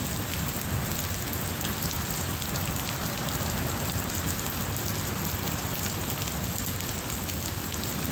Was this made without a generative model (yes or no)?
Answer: yes